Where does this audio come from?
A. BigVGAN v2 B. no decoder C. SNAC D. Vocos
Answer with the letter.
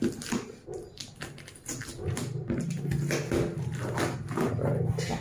B